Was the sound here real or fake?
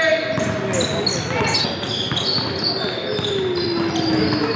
real